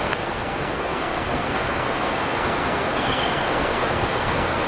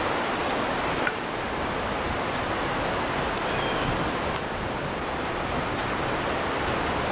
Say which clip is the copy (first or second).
first